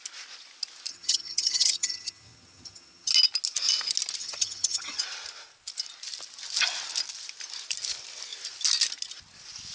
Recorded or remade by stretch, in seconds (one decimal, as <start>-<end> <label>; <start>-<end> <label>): 0.0-0.9 recorded; 0.9-3.1 remade; 3.1-4.2 recorded; 4.2-5.0 remade; 5.0-9.7 recorded